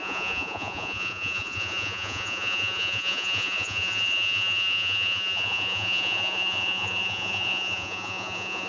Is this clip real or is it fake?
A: fake